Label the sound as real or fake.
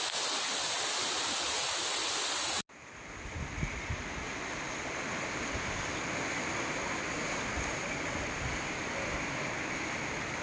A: real